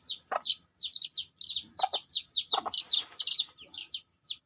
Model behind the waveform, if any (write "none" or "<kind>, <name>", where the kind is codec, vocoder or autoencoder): none